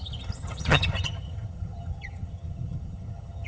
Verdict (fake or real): fake